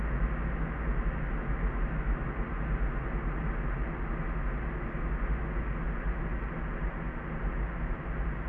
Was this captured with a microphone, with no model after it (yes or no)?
yes